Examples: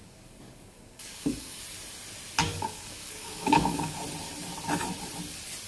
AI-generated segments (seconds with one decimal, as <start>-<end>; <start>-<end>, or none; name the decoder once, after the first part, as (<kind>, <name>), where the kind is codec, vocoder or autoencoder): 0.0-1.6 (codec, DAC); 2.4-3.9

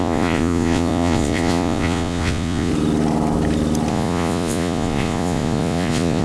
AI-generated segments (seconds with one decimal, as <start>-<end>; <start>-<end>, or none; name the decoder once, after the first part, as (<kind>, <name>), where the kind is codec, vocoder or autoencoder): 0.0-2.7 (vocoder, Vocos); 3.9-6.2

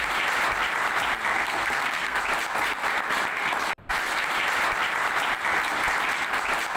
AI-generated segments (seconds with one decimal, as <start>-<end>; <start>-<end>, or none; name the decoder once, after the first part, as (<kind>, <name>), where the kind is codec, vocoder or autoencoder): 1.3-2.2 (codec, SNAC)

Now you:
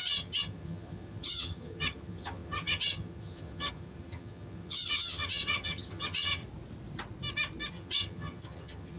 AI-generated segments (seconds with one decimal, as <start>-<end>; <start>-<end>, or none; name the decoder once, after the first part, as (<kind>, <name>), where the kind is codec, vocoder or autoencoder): 0.0-6.4 (vocoder, HiFi-GAN); 7.7-9.0

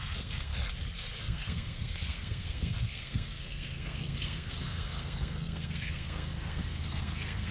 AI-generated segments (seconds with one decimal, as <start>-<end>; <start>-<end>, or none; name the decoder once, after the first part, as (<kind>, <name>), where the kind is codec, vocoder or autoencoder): 0.0-0.5 (codec, SNAC); 1.2-7.5

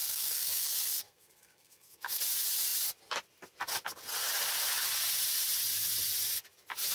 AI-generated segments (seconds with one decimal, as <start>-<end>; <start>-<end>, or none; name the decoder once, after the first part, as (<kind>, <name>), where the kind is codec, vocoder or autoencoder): 0.0-2.2 (codec, SNAC)

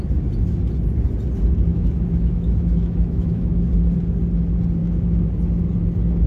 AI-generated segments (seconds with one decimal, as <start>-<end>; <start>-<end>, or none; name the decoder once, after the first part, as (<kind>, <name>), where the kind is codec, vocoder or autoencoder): 1.7-3.6 (autoencoder, DAC-VAE); 4.8-5.3

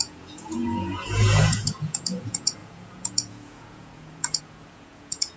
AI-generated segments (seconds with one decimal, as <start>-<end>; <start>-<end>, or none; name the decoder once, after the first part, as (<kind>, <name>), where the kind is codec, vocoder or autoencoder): 0.0-5.4 (vocoder, Vocos)